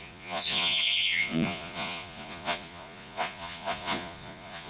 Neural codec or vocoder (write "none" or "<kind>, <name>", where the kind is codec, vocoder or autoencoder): vocoder, Vocos